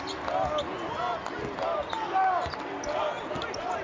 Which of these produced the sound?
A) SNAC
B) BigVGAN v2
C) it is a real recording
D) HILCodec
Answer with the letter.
C